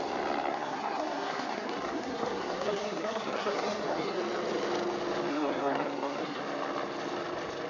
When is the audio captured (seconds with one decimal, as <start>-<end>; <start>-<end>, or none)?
0.0-0.5; 4.2-5.3; 6.4-7.7